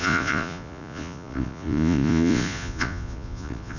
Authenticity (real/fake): fake